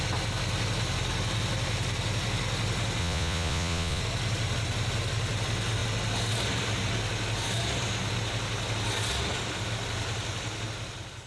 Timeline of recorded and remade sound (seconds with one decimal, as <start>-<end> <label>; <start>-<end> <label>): 0.0-3.0 recorded; 3.0-4.0 remade; 4.0-11.3 recorded